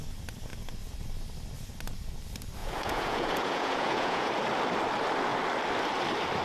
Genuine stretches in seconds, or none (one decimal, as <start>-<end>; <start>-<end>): 0.0-2.6; 4.3-6.4